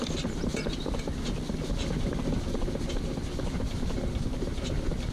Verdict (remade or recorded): recorded